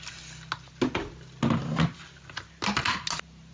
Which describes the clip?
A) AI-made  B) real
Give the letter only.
B